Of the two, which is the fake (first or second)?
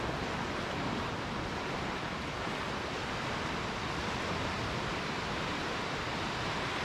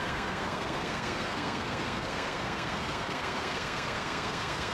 second